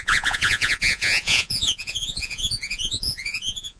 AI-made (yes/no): yes